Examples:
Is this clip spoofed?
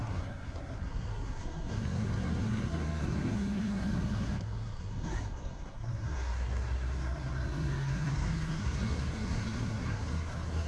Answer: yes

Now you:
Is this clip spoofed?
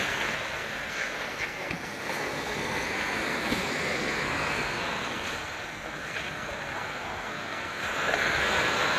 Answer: yes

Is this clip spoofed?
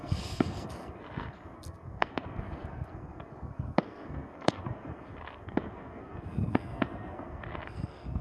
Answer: yes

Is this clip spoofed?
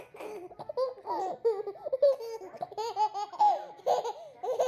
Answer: no